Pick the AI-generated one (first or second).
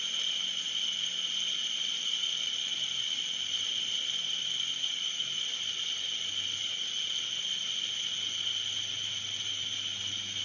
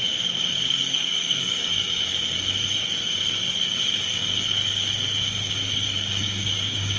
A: second